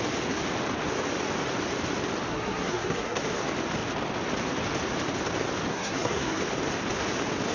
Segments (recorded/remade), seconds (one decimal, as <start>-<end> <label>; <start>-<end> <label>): 0.0-2.3 recorded; 2.3-3.2 remade; 3.2-5.7 recorded; 5.7-6.4 remade; 6.4-7.5 recorded